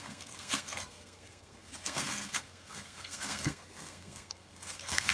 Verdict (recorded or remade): remade